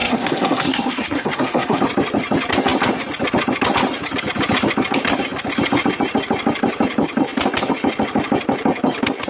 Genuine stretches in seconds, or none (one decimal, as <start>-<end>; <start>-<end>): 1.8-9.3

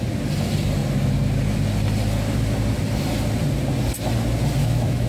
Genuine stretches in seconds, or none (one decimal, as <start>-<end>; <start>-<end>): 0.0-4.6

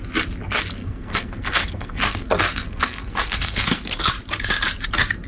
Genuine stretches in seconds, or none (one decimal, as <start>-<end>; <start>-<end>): 0.0-0.8; 4.0-5.3